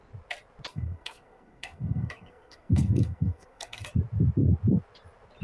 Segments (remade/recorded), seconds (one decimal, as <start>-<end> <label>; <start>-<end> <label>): 0.0-0.7 recorded; 0.7-3.9 remade; 3.9-5.4 recorded